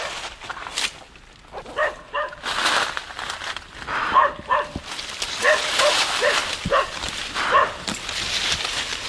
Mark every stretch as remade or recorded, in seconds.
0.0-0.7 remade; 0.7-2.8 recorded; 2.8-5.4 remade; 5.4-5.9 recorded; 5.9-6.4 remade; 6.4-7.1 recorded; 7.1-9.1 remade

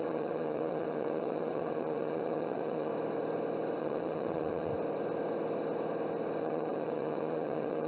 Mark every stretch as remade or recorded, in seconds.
0.0-2.9 remade; 2.9-3.8 recorded; 3.8-4.7 remade; 4.7-6.4 recorded; 6.4-7.9 remade

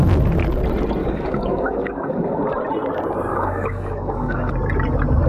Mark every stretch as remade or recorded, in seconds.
0.0-1.0 recorded; 1.0-2.5 remade; 2.5-3.3 recorded; 3.3-4.5 remade; 4.5-5.3 recorded

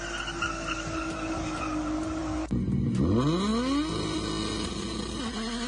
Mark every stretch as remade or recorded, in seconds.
0.0-5.7 recorded

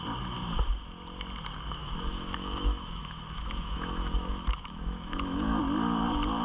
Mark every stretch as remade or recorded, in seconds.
0.0-1.8 recorded; 1.8-5.6 remade; 5.6-6.4 recorded